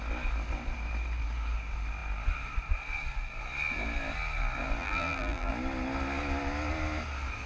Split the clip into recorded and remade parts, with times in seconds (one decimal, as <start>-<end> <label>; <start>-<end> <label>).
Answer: 0.0-4.8 recorded; 4.8-5.5 remade; 5.5-7.5 recorded